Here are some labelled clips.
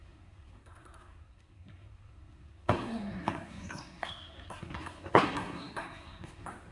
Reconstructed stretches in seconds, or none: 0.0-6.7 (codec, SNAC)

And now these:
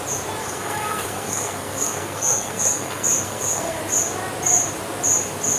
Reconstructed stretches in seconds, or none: 0.4-3.8 (codec, SNAC)

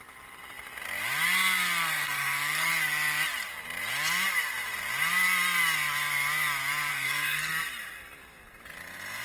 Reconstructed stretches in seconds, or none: 1.8-2.7 (codec, SNAC); 6.9-7.5

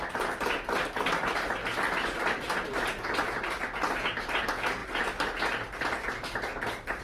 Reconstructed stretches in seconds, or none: none